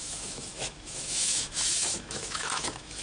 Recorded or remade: remade